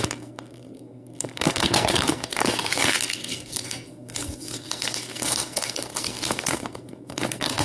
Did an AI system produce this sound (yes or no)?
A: yes